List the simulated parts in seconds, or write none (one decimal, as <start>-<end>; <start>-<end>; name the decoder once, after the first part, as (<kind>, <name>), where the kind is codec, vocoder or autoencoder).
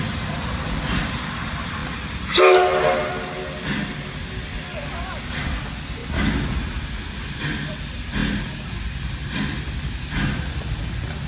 none